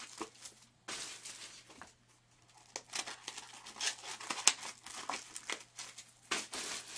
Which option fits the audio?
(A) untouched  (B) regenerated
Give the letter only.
A